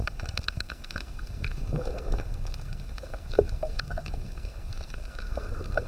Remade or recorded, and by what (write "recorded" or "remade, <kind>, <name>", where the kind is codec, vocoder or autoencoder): remade, codec, SNAC